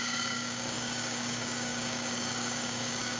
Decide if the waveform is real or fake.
fake